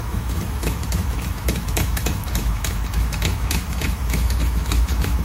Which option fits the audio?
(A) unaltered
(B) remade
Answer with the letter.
B